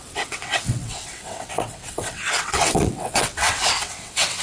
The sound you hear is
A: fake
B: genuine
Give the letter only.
A